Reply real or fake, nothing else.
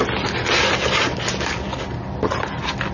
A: real